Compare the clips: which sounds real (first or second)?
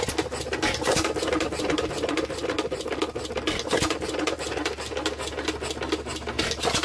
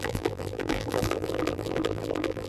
first